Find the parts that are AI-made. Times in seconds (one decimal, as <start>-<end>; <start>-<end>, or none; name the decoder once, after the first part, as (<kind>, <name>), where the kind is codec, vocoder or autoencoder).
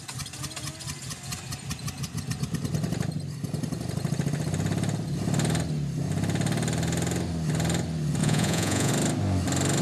8.2-8.9 (vocoder, Vocos)